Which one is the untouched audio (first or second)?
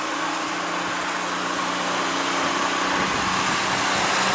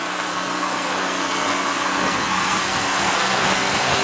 first